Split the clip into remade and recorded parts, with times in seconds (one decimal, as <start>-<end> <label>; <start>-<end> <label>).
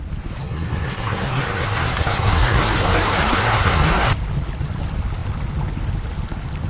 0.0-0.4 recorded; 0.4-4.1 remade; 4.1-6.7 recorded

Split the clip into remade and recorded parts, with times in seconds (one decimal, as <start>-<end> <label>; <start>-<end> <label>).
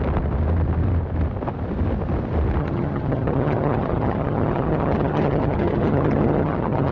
0.0-2.6 recorded; 2.6-6.9 remade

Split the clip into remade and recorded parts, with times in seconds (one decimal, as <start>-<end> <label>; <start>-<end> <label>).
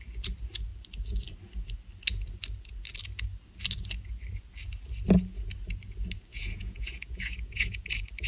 0.0-6.3 recorded; 6.3-7.8 remade; 7.8-8.3 recorded